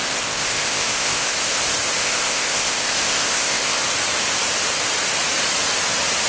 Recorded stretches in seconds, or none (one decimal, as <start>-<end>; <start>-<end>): 1.6-2.0; 3.8-6.3